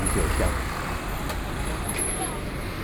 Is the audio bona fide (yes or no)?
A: yes